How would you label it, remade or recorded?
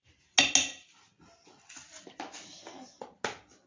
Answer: recorded